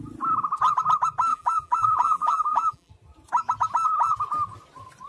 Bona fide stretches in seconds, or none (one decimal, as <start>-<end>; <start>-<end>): 0.0-1.3; 2.9-5.1